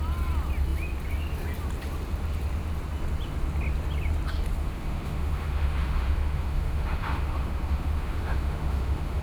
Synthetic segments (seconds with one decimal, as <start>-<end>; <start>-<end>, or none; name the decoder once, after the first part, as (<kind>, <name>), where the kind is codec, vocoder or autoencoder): 4.6-9.2 (autoencoder, DAC-VAE)